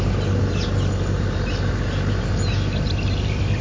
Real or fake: real